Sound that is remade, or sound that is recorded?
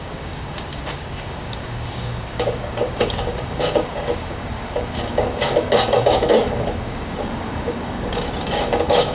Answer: remade